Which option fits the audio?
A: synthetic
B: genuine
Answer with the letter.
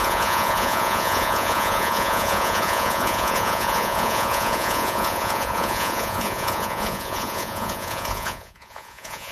A